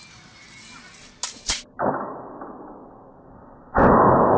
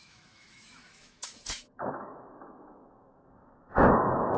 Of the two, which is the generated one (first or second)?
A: second